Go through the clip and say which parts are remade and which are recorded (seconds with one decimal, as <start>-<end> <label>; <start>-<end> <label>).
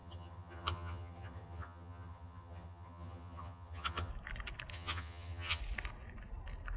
0.0-4.1 remade; 4.1-4.7 recorded; 4.7-5.6 remade; 5.6-6.8 recorded